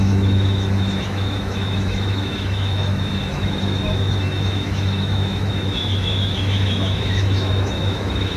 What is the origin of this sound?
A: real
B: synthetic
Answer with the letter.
B